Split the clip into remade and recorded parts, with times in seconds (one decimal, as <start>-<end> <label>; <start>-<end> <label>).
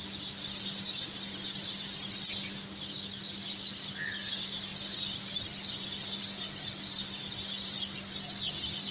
0.0-8.9 recorded